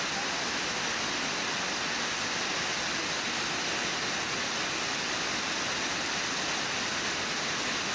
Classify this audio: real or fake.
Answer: real